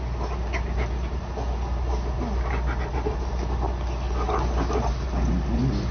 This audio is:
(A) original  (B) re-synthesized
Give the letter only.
A